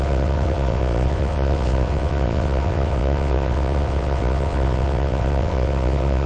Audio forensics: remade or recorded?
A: remade